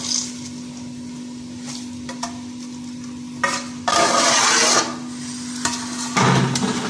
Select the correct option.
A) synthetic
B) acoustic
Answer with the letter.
B